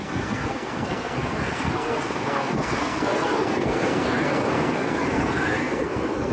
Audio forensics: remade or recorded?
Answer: remade